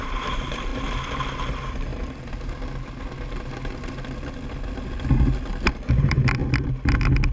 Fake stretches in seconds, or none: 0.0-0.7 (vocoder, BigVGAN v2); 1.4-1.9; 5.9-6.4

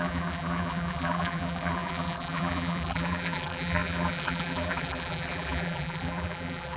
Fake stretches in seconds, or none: 0.0-6.8 (vocoder, BigVGAN v2)

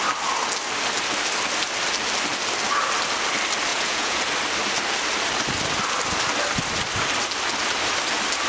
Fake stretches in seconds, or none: 3.7-4.2 (vocoder, Vocos)

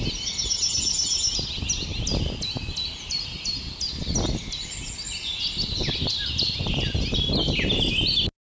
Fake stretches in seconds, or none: none

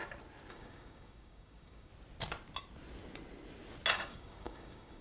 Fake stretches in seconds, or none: 0.5-1.9 (codec, DAC); 3.9-5.0

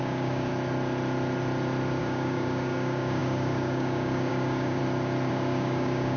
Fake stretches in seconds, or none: 0.0-0.5 (codec, DAC); 2.0-4.8; 5.3-6.2